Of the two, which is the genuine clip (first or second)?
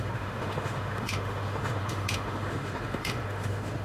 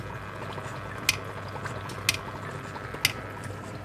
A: second